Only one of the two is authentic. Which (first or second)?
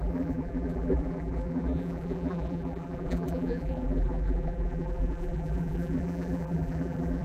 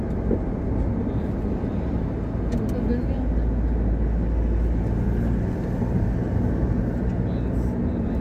second